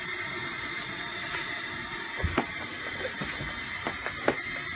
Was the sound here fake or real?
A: real